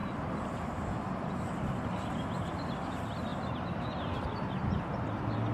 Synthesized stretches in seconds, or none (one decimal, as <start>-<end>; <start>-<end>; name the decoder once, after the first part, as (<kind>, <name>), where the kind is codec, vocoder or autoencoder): none